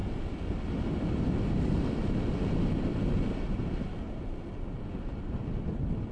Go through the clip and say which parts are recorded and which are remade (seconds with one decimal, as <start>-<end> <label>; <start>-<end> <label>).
0.0-6.1 recorded